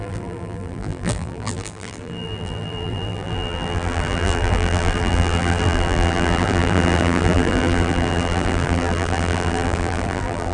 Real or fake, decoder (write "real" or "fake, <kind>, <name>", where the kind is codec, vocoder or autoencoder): fake, vocoder, BigVGAN v2